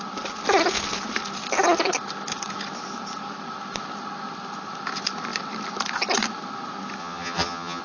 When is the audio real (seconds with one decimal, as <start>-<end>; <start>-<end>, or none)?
0.0-7.0